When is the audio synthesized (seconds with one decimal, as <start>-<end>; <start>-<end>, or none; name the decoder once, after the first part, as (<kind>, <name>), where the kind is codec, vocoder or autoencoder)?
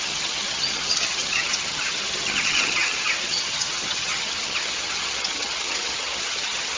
0.0-6.8 (vocoder, HiFi-GAN)